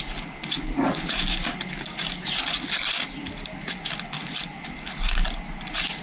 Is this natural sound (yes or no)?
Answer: yes